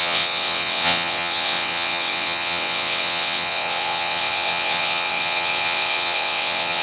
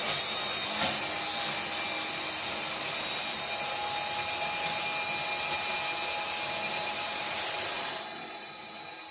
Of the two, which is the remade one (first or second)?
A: first